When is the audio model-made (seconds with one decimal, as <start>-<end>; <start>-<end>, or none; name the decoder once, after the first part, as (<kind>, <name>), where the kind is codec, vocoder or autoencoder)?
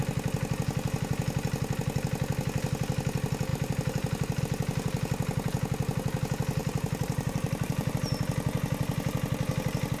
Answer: 3.5-4.4 (vocoder, BigVGAN v2); 6.6-7.9